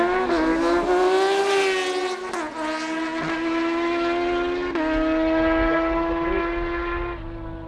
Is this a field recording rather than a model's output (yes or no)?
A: yes